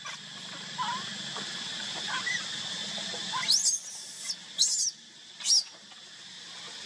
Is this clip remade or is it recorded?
recorded